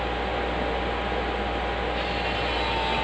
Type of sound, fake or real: real